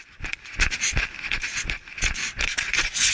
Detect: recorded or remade recorded